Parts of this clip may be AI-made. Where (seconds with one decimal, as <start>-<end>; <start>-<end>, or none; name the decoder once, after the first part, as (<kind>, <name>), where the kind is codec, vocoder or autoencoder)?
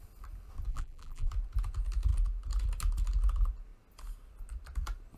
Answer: 0.7-1.3 (vocoder, BigVGAN v2)